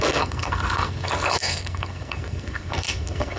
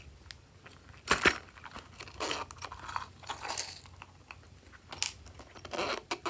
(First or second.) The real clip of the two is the second